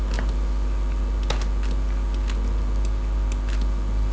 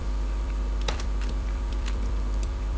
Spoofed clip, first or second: second